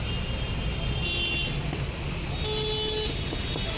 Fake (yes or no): no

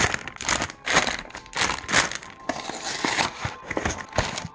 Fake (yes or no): no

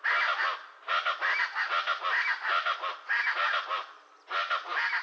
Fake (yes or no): no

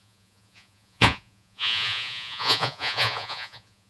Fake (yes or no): yes